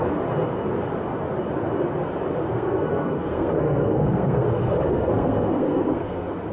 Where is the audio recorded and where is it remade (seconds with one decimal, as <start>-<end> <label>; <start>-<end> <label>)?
0.0-2.4 recorded; 2.4-6.5 remade